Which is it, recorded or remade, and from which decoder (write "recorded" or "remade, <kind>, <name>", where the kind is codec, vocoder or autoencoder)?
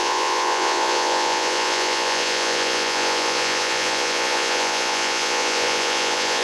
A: remade, vocoder, Vocos